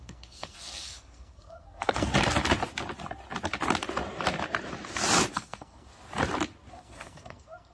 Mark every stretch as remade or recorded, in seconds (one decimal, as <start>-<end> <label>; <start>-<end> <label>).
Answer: 0.0-2.1 remade; 2.1-5.3 recorded; 5.3-5.9 remade; 5.9-6.7 recorded; 6.7-7.7 remade